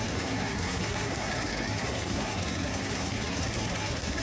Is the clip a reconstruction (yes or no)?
yes